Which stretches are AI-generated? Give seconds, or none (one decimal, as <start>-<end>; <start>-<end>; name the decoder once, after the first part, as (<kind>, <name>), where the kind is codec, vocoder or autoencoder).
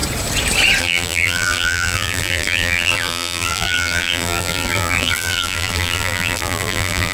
0.8-7.1 (vocoder, BigVGAN v2)